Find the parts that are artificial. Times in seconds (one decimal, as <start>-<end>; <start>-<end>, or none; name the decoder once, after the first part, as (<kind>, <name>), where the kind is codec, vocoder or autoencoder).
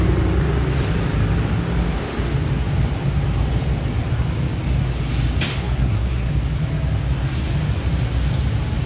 5.5-6.3 (codec, SNAC)